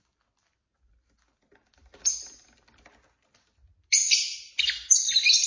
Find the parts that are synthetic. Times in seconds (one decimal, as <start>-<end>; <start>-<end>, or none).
none